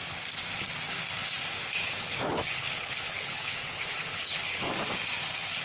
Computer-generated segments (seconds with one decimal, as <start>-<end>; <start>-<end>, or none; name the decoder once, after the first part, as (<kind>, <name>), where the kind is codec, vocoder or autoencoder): 1.8-4.7 (codec, HILCodec)